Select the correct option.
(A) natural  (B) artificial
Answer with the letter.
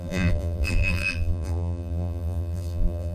B